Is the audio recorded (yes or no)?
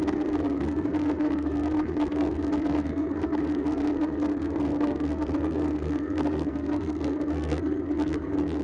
no